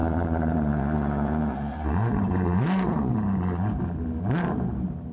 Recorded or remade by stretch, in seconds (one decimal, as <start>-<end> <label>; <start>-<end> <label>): 0.0-3.1 remade; 3.1-5.1 recorded